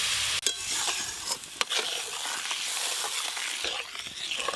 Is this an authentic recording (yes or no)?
yes